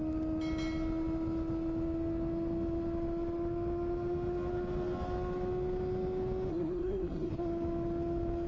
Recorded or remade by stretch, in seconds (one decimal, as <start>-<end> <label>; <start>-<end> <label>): 0.0-6.5 recorded; 6.5-7.3 remade; 7.3-8.5 recorded

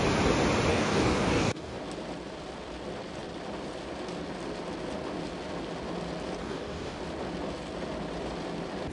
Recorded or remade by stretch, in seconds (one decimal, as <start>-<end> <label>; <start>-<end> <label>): 0.0-0.7 recorded; 0.7-1.8 remade; 1.8-6.4 recorded; 6.4-7.0 remade; 7.0-8.9 recorded

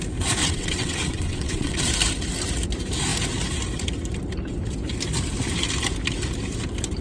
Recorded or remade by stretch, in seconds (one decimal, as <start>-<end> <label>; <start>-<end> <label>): 0.0-0.4 recorded; 0.4-1.9 remade; 1.9-7.0 recorded

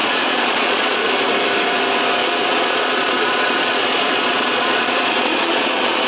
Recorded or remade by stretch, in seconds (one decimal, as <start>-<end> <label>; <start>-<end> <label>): 0.0-1.1 remade; 1.1-2.2 recorded; 2.2-6.1 remade

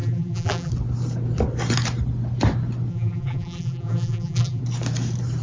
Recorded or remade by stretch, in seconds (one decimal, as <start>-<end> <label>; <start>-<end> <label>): 0.0-0.7 remade; 0.7-2.9 recorded; 2.9-4.6 remade; 4.6-5.4 recorded

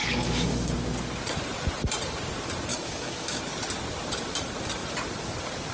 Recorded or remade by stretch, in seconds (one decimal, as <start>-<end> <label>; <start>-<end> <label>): 0.0-0.7 remade; 0.7-2.7 recorded; 2.7-3.4 remade; 3.4-5.7 recorded